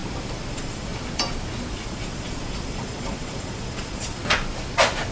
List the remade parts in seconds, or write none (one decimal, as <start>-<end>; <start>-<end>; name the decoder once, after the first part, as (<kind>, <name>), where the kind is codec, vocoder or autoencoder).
0.5-0.9 (vocoder, Vocos); 1.7-4.2